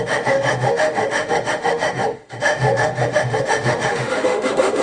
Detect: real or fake fake